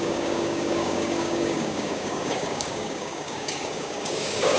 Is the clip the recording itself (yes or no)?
no